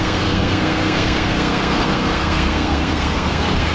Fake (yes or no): yes